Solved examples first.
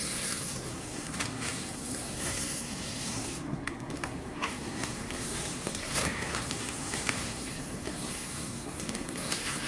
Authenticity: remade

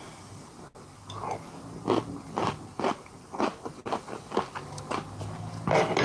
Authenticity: recorded